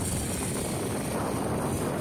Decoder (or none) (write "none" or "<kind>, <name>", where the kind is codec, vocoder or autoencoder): none